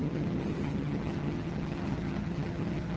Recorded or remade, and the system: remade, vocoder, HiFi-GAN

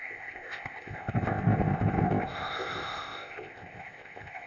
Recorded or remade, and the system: remade, codec, ZipCodec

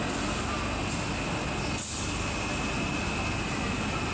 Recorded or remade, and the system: recorded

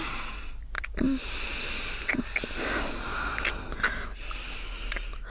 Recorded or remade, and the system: recorded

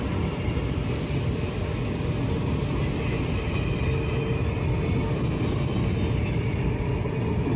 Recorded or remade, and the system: recorded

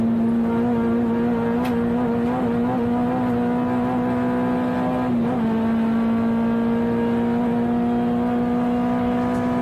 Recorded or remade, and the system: recorded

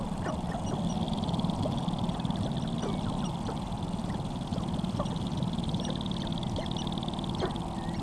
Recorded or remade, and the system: recorded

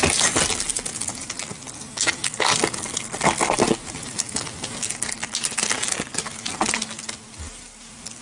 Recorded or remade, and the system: recorded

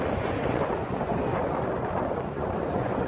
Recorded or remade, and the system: remade, vocoder, Vocos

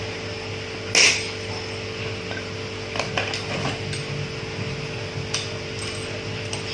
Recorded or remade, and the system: recorded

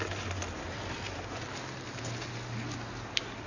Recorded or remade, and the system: recorded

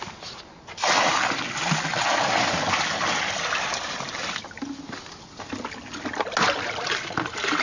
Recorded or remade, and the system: recorded